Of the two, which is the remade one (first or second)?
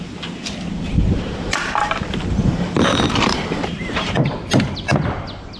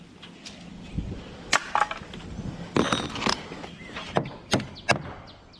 first